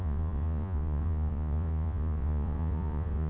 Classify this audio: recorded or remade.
remade